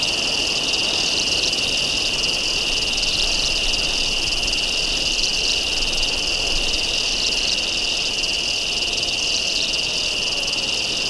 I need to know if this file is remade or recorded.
recorded